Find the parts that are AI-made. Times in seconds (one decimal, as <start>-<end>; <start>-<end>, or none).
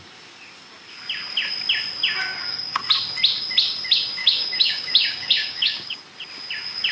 2.3-2.8; 4.2-6.0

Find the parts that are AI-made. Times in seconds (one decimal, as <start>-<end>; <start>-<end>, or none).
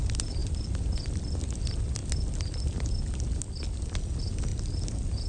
none